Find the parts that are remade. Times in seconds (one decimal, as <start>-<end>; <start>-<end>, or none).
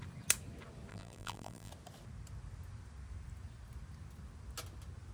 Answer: 0.9-1.7